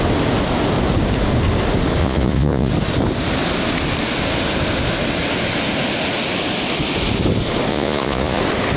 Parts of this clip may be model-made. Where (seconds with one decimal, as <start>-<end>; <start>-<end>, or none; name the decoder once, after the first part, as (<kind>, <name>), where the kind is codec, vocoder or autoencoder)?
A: 2.0-2.7 (vocoder, Vocos); 7.7-8.4